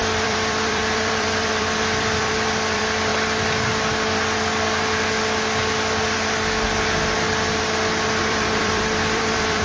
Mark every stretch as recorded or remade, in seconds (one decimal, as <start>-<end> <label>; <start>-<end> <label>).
0.0-3.1 remade; 3.1-8.2 recorded; 8.2-9.6 remade